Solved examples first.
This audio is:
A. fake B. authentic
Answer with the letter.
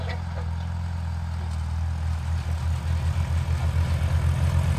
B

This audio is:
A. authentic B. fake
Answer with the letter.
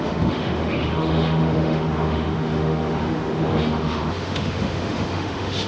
B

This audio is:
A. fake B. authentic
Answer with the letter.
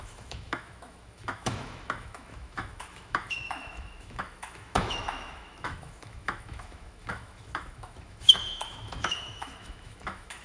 A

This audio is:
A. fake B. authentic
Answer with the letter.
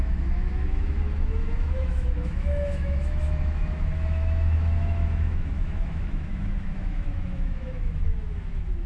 A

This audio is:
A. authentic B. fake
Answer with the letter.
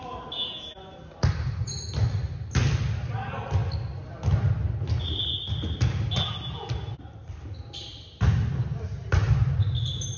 A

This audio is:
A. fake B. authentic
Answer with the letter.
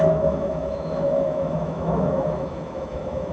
A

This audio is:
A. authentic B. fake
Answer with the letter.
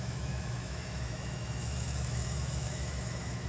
B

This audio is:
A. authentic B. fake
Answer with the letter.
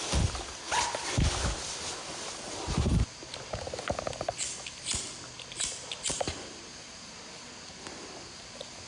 A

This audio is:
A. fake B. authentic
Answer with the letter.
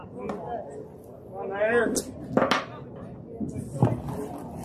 B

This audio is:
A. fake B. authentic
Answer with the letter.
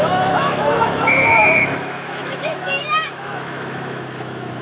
A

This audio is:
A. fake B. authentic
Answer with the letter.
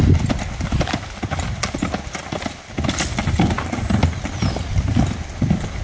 B